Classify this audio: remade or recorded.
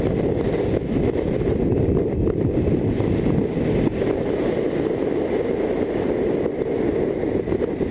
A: recorded